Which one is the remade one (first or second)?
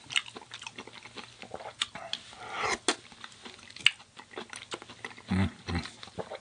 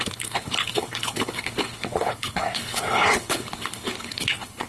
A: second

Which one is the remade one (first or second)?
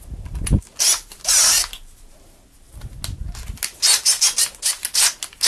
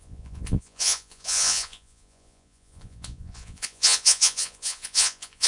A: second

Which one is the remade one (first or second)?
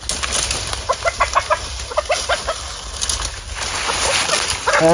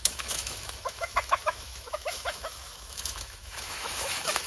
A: second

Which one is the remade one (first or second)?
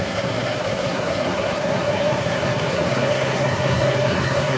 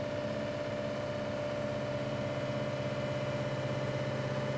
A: first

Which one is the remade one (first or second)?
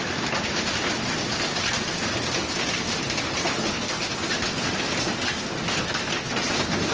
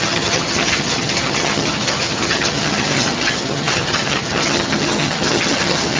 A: second